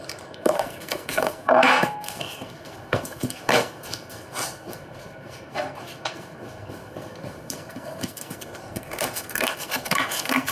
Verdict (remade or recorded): remade